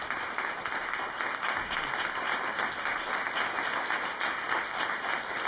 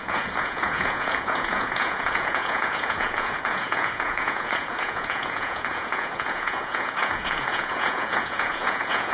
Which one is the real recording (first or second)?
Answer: first